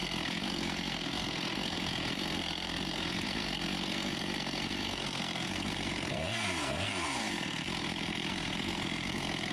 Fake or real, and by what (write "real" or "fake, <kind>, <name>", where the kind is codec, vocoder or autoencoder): fake, codec, SNAC